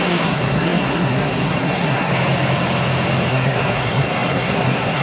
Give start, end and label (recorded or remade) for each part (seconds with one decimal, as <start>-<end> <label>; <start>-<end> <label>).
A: 0.0-2.1 remade; 2.1-3.3 recorded; 3.3-5.0 remade